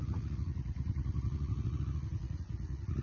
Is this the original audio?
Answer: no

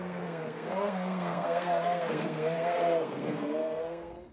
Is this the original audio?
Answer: no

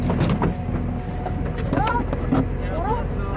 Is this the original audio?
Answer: yes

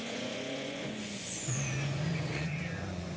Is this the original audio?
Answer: no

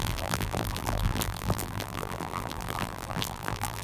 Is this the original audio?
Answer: no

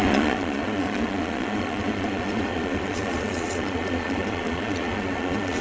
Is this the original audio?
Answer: no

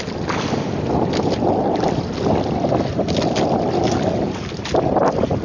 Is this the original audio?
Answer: yes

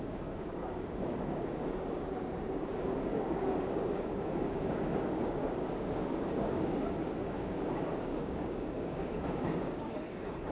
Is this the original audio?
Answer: no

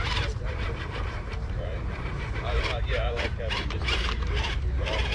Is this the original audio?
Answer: no